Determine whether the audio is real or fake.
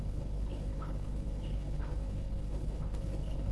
fake